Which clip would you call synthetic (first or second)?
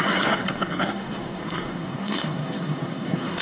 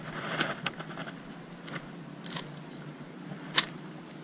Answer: first